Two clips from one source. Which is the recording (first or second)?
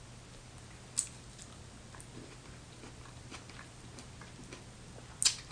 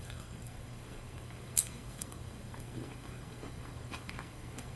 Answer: first